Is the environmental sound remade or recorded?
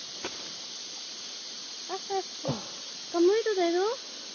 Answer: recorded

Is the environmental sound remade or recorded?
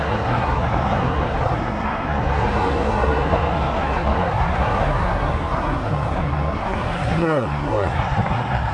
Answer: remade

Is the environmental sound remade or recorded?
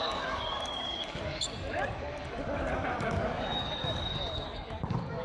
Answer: remade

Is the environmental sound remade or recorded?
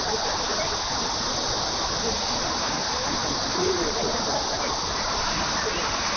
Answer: recorded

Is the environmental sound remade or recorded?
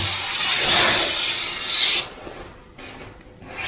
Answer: recorded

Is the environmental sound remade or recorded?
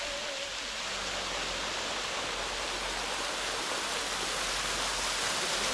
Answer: recorded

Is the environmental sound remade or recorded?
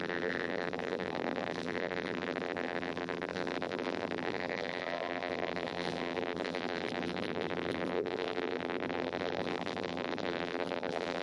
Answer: remade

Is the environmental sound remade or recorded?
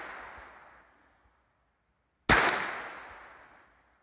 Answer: recorded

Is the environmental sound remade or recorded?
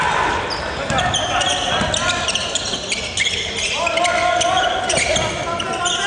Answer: recorded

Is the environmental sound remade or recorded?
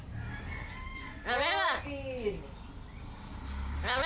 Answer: recorded